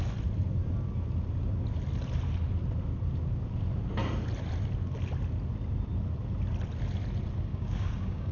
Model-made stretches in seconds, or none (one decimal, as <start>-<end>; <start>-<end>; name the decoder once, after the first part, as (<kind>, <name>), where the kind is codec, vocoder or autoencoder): 7.5-8.3 (codec, DAC)